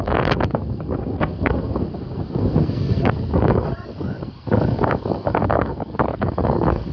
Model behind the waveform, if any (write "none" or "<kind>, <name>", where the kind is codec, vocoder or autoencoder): codec, SNAC